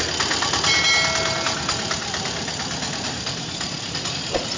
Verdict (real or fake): real